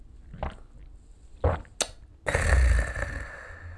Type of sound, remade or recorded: recorded